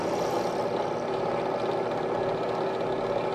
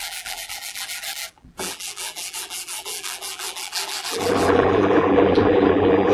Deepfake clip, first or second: second